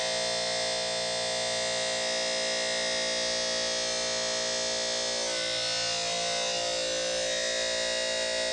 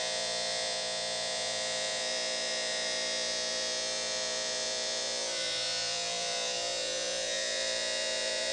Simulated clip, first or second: second